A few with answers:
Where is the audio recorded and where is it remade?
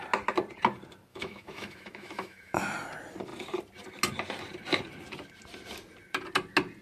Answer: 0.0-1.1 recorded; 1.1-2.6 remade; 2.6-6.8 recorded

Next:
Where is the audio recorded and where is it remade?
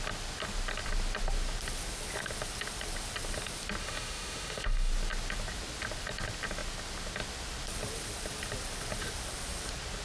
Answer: 0.0-3.8 recorded; 3.8-4.9 remade; 4.9-10.0 recorded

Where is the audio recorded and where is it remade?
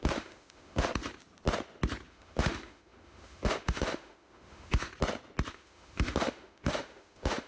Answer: 0.0-1.0 remade; 1.0-2.1 recorded; 2.1-4.9 remade; 4.9-5.5 recorded; 5.5-7.5 remade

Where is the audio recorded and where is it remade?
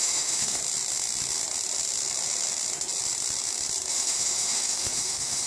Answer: 0.0-0.6 remade; 0.6-3.9 recorded; 3.9-5.5 remade